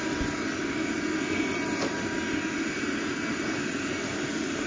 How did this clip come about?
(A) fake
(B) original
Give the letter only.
B